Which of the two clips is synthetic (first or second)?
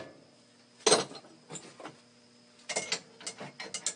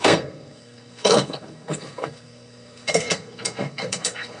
second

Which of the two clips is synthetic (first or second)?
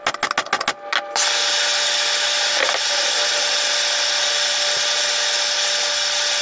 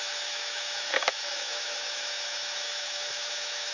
second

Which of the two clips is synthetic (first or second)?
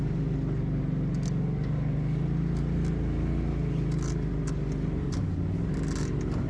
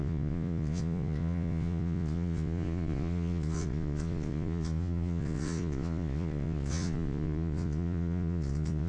second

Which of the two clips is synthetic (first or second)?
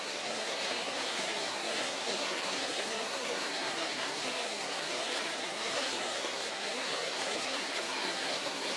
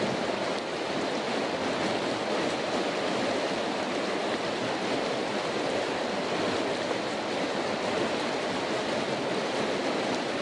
first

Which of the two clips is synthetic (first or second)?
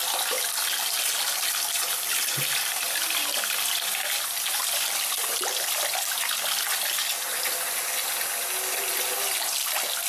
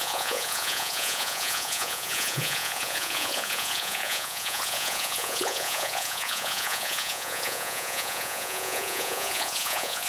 second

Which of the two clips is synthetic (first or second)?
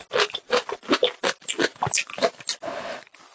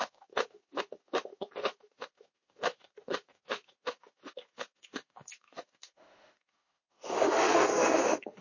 second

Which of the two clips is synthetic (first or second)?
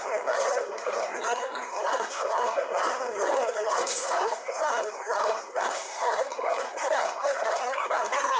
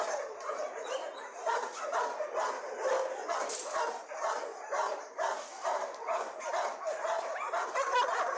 first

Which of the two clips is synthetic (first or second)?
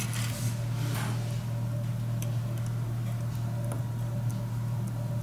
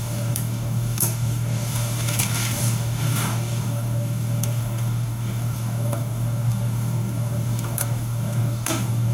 second